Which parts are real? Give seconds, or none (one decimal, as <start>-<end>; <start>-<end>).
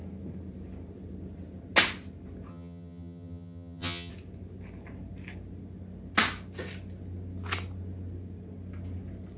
0.0-2.5; 4.1-9.4